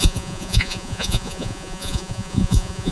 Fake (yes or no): yes